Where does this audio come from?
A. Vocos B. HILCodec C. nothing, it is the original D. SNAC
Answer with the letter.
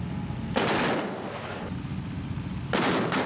C